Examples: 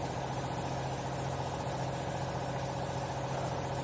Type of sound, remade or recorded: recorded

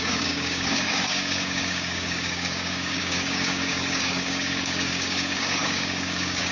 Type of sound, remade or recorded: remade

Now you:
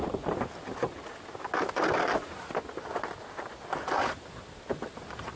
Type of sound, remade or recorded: recorded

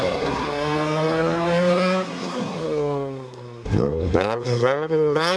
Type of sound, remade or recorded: remade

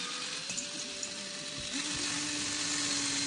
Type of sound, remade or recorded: recorded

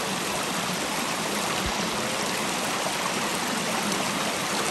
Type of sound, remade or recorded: recorded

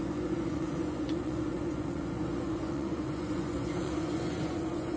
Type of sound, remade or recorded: remade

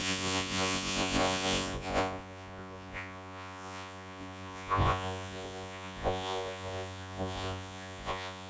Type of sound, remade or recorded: remade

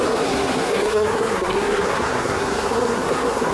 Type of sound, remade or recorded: remade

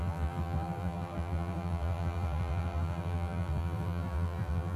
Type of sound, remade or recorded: remade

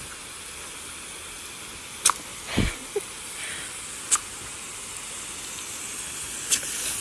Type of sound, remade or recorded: recorded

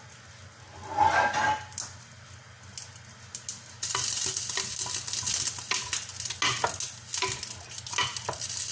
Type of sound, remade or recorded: recorded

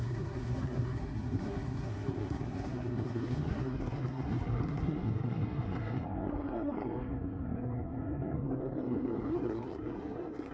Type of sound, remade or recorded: remade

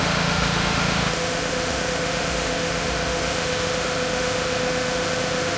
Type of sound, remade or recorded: remade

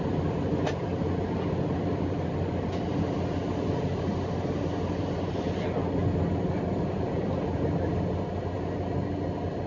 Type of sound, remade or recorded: recorded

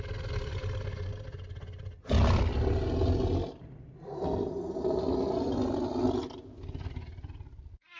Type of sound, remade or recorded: recorded